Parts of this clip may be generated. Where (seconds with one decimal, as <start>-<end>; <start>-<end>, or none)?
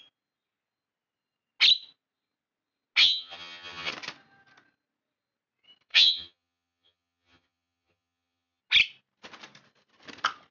3.0-3.9; 5.9-8.6